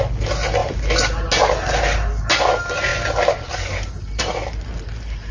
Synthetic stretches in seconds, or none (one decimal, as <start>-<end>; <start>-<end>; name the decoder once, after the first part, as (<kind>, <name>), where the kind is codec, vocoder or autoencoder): none